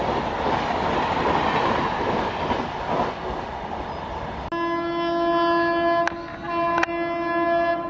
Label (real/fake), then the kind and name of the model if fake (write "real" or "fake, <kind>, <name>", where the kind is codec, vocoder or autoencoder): real